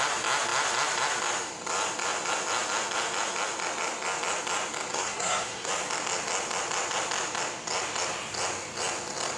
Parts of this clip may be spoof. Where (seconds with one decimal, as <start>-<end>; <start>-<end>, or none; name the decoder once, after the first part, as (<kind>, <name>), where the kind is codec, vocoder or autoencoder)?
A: 4.9-5.7 (codec, SNAC)